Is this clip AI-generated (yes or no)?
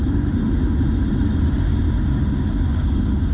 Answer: no